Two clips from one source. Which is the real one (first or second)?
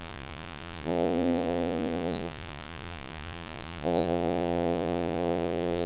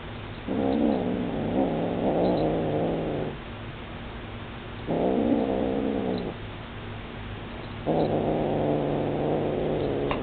second